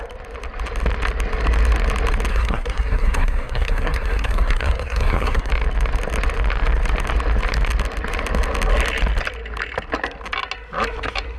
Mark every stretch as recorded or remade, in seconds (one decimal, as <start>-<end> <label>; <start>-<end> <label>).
0.0-2.3 recorded; 2.3-5.5 remade; 5.5-11.4 recorded